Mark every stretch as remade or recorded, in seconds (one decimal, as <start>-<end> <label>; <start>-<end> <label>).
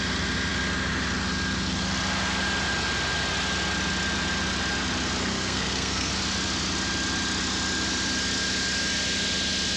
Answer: 0.0-5.2 recorded; 5.2-6.1 remade; 6.1-9.8 recorded